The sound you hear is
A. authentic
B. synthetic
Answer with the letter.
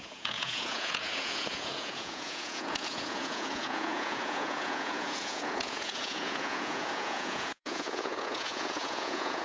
B